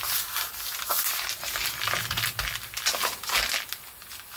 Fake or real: real